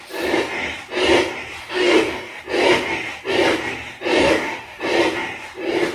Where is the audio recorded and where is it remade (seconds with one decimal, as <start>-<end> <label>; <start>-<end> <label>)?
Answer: 0.0-1.6 recorded; 1.6-2.4 remade; 2.4-4.2 recorded; 4.2-4.8 remade; 4.8-5.9 recorded